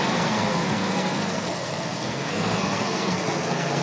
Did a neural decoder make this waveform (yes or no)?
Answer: yes